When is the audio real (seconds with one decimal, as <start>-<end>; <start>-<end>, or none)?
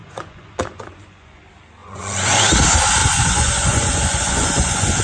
1.4-1.8; 2.4-3.0